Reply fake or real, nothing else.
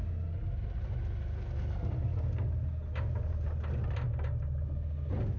real